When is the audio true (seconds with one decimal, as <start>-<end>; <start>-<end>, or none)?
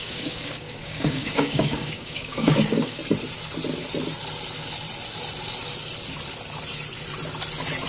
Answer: 3.0-7.9